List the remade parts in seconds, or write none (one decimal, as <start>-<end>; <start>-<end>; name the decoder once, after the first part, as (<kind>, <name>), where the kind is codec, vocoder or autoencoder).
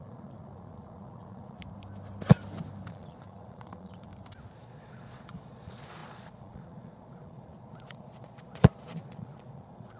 0.0-1.6 (vocoder, Vocos); 2.9-4.1; 4.6-10.0